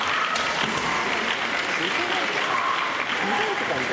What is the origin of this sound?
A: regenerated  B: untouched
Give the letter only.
B